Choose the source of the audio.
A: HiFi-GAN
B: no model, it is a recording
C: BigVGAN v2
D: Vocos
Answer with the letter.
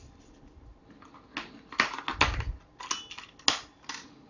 B